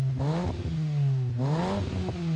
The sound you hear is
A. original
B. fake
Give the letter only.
A